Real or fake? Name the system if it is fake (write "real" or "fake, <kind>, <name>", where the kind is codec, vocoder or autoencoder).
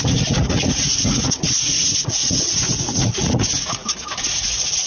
fake, vocoder, Vocos